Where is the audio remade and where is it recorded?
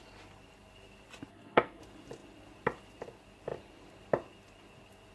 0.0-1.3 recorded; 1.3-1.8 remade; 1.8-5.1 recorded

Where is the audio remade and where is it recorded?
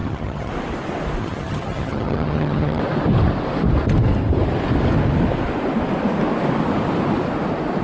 0.0-0.5 remade; 0.5-1.2 recorded; 1.2-2.8 remade; 2.8-7.8 recorded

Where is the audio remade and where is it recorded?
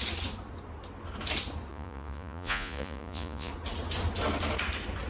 0.0-1.7 recorded; 1.7-3.5 remade; 3.5-5.1 recorded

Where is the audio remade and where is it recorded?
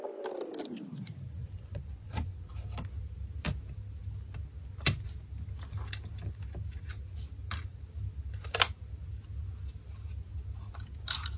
0.0-1.4 recorded; 1.4-2.5 remade; 2.5-11.4 recorded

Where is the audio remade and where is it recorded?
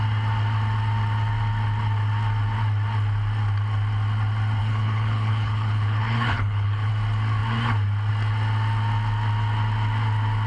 0.0-4.6 recorded; 4.6-6.9 remade; 6.9-10.5 recorded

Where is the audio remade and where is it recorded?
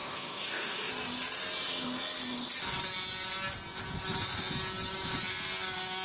0.0-0.9 remade; 0.9-6.0 recorded